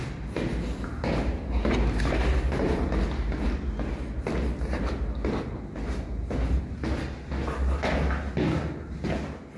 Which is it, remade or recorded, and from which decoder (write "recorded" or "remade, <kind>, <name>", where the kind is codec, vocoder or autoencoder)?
recorded